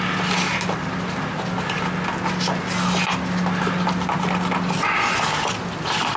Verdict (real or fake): real